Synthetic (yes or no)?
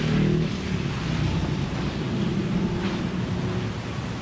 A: no